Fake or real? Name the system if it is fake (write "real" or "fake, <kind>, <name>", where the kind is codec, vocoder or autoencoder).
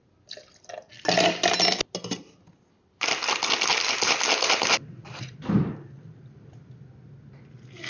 real